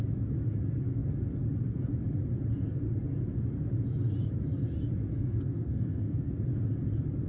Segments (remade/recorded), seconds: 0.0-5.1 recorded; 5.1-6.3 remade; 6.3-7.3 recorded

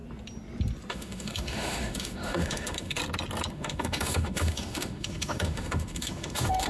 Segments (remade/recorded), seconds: 0.0-0.9 recorded; 0.9-3.0 remade; 3.0-3.5 recorded; 3.5-6.7 remade

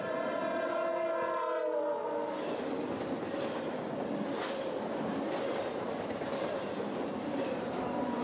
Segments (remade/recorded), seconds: 0.0-1.6 remade; 1.6-5.4 recorded; 5.4-8.2 remade